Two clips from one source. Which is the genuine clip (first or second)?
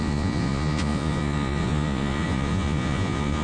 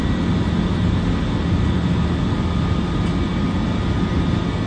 second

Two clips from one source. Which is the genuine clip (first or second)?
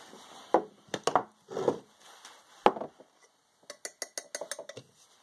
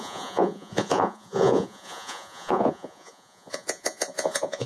first